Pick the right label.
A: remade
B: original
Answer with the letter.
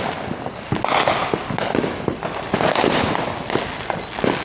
B